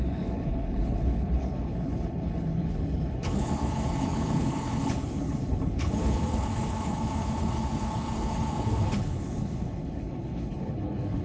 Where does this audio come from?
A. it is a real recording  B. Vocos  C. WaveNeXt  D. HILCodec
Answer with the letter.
D